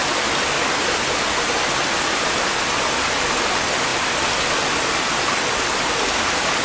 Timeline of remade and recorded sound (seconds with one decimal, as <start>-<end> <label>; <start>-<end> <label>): 0.0-6.6 recorded